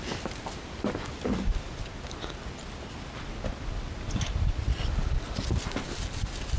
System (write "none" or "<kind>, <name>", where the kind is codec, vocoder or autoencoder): none